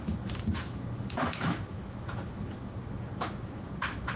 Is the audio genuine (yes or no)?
no